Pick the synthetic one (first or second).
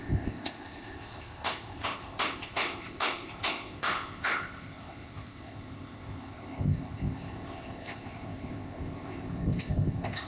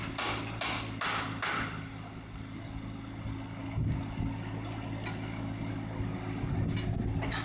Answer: first